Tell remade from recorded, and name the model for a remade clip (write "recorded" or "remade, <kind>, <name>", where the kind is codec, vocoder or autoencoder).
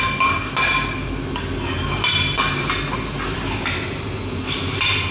recorded